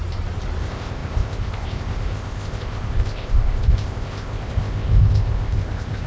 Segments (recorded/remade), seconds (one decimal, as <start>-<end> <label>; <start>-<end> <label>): 0.0-0.6 recorded; 0.6-6.1 remade